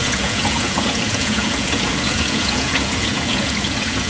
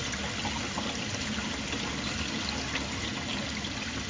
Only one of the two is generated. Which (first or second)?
first